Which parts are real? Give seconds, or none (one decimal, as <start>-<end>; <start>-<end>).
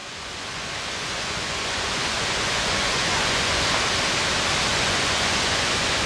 3.7-4.7